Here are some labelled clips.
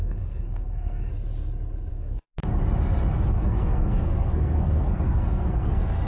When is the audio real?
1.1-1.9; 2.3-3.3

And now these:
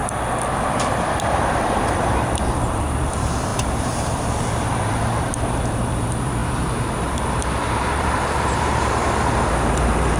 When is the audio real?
0.0-0.6